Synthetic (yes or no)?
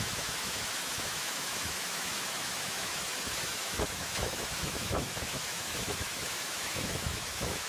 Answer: yes